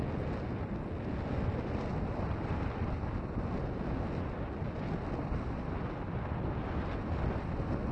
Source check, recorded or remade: recorded